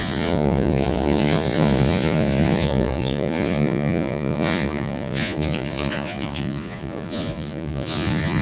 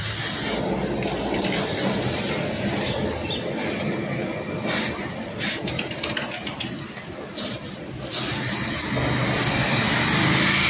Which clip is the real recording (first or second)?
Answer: second